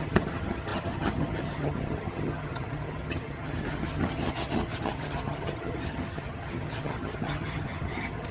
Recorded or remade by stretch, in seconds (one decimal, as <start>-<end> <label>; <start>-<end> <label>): 0.0-8.3 remade